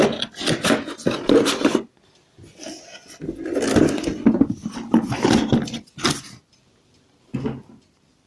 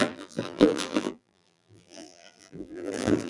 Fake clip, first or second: second